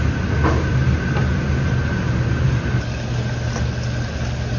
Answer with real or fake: real